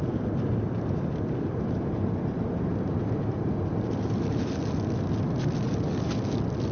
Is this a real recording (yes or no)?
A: yes